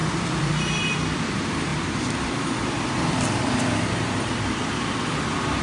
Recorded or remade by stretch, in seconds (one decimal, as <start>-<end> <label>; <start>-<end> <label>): 0.0-1.2 remade; 1.2-1.7 recorded; 1.7-5.1 remade; 5.1-5.6 recorded